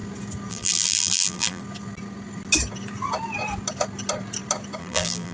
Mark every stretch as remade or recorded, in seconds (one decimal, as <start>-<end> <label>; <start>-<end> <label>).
0.0-0.5 recorded; 0.5-1.6 remade; 1.6-4.8 recorded; 4.8-5.3 remade